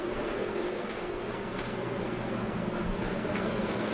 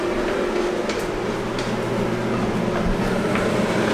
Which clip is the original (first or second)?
second